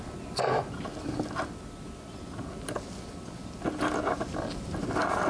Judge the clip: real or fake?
real